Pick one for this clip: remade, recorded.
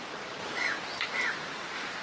recorded